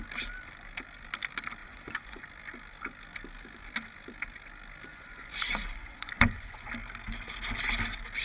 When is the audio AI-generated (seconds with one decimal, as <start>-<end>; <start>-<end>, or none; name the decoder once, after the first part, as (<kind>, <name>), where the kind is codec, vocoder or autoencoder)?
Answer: 1.6-2.2 (vocoder, Vocos); 4.9-6.7